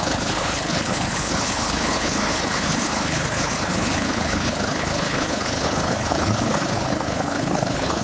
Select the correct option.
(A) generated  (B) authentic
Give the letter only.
A